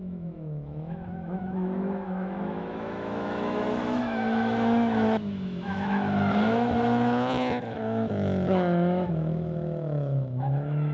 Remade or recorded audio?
remade